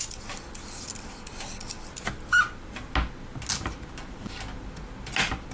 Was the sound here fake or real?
real